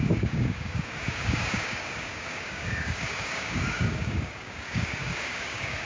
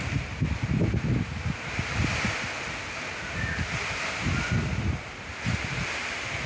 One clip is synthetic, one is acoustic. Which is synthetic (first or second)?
first